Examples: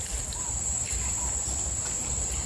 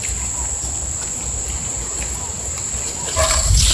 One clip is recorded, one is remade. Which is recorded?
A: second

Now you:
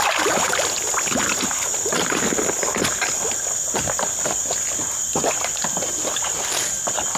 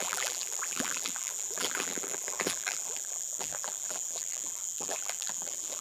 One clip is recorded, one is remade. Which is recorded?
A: first